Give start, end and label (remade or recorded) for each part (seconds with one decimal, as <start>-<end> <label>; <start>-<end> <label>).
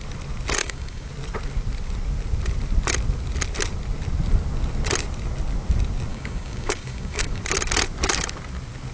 0.0-0.6 recorded; 0.6-1.1 remade; 1.1-6.1 recorded; 6.1-7.4 remade; 7.4-8.9 recorded